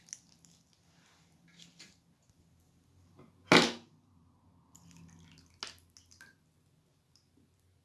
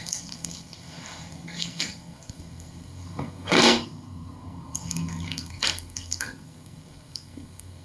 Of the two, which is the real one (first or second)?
first